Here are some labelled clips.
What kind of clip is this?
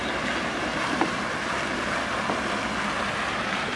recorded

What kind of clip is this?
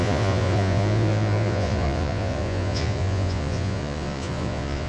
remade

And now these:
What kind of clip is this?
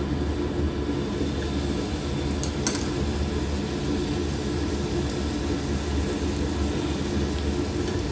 recorded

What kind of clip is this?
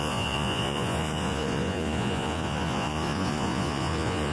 remade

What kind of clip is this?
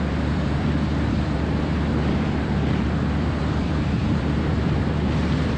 remade